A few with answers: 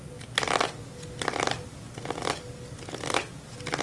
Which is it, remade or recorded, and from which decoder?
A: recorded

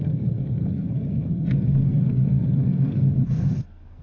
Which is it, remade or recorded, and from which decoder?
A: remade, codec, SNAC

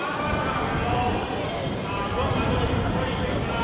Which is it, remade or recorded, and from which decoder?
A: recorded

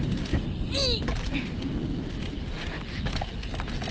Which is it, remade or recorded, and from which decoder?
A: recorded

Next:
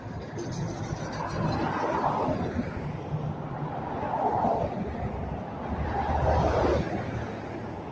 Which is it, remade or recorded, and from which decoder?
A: recorded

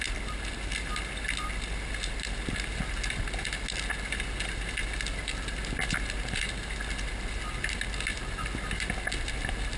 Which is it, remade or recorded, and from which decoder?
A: recorded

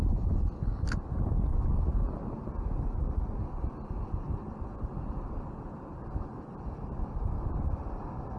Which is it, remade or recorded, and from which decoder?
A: recorded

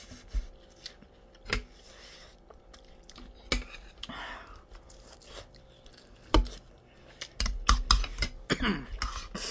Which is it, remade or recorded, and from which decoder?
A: recorded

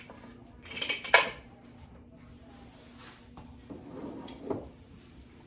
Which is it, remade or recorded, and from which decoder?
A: recorded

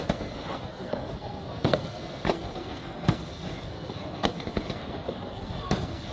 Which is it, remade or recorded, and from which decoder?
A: remade, codec, SNAC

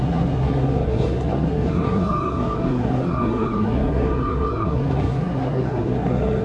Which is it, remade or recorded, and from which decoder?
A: remade, codec, SNAC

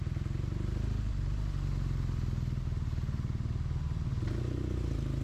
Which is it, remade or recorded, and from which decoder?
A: recorded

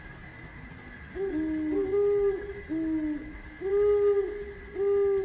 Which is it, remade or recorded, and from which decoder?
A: recorded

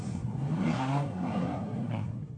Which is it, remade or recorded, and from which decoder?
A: remade, codec, SNAC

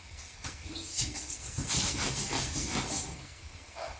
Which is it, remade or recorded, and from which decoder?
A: remade, codec, SNAC